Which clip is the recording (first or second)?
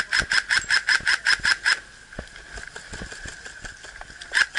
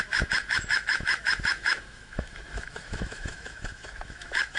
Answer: first